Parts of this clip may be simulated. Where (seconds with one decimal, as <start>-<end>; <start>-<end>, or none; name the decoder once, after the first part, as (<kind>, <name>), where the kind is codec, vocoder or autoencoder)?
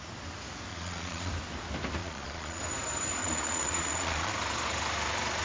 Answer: 0.7-1.3 (vocoder, Vocos); 2.0-2.6; 3.2-4.3